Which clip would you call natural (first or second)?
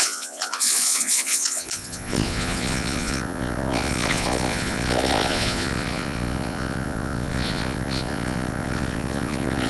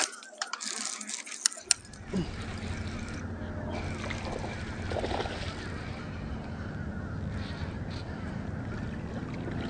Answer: second